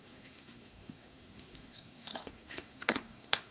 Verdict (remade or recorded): remade